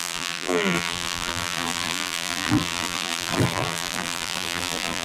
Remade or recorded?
remade